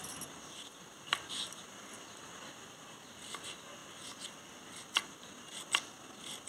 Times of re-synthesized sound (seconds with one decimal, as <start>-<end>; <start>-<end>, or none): none